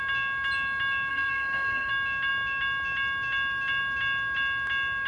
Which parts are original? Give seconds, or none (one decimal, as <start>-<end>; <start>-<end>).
0.0-1.1; 1.9-5.1